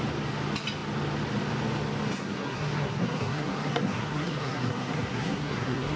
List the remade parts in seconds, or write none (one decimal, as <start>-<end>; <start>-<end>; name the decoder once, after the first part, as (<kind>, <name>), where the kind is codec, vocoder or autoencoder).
2.1-6.0 (codec, SNAC)